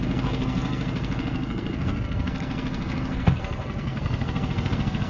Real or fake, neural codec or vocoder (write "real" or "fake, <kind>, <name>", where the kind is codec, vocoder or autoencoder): fake, codec, SNAC